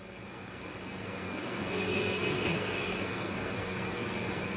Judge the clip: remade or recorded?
remade